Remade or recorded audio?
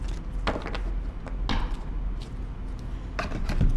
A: recorded